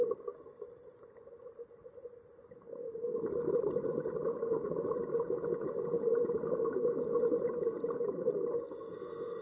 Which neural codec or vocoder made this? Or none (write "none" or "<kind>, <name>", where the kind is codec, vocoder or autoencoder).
none